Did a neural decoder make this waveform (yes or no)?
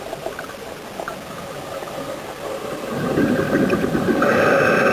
no